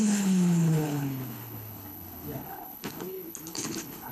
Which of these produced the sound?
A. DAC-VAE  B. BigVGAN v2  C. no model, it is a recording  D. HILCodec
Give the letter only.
D